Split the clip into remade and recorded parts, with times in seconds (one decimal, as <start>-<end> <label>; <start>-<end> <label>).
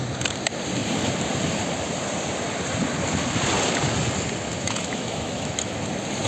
0.0-4.5 recorded; 4.5-5.7 remade; 5.7-6.3 recorded